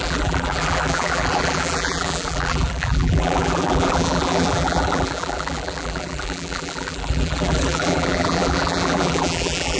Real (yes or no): no